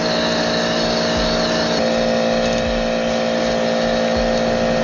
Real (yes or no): yes